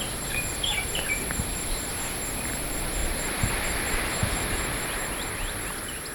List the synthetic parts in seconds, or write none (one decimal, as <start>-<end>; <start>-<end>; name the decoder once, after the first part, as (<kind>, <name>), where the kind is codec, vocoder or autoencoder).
0.0-3.0 (vocoder, BigVGAN v2); 4.8-6.1